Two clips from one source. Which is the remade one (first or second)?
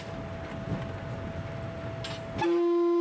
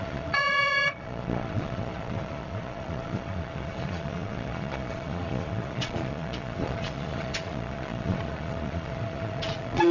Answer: second